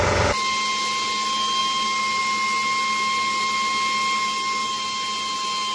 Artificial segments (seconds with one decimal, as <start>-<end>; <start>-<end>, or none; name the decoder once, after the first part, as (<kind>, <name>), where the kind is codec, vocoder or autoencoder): none